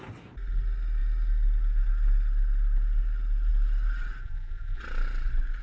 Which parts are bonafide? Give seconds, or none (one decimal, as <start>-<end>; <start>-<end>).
0.0-4.2; 4.8-5.6